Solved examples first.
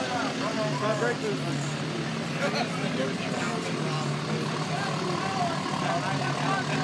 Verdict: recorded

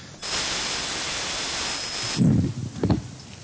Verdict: recorded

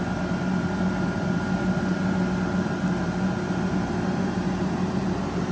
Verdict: recorded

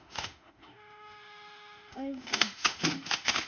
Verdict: remade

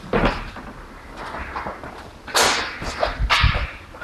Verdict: recorded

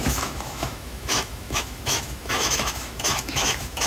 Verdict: remade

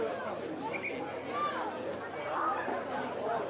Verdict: recorded